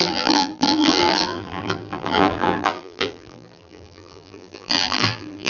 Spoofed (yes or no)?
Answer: yes